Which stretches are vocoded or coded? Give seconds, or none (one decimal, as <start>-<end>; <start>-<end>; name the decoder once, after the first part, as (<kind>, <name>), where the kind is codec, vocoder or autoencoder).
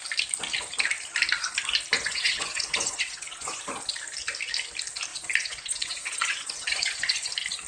1.9-3.6 (vocoder, Vocos); 5.1-7.3